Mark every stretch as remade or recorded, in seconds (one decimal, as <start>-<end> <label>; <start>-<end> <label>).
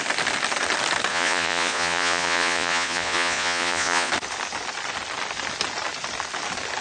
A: 0.0-1.1 recorded; 1.1-4.1 remade; 4.1-6.8 recorded